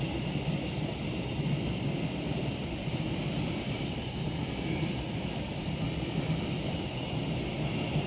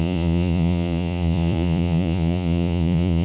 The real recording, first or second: first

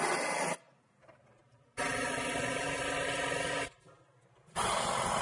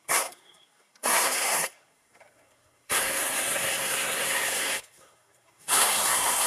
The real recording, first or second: first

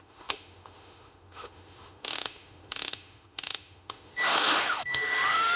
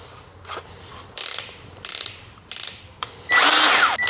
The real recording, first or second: second